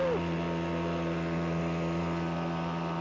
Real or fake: real